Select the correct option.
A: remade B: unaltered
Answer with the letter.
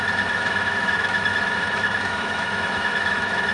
A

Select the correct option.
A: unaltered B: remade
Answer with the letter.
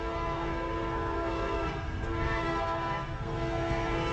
B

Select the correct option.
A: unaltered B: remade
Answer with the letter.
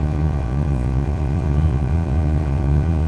B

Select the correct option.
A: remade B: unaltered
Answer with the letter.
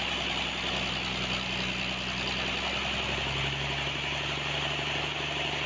B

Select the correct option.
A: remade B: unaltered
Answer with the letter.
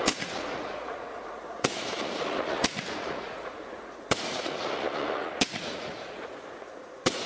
A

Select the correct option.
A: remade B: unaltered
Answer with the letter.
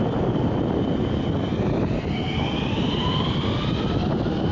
B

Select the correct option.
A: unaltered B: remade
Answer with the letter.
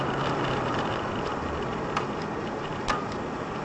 B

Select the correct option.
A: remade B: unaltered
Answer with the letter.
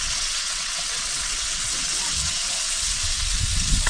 A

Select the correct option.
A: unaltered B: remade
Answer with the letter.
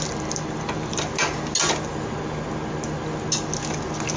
A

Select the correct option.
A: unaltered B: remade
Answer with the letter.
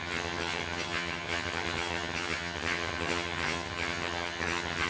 B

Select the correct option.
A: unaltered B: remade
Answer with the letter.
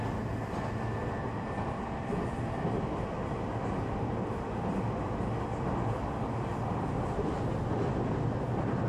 A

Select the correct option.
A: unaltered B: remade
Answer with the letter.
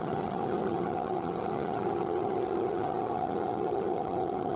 B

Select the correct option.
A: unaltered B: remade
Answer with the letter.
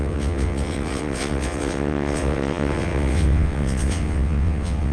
B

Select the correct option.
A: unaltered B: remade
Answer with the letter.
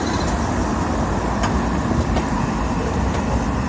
A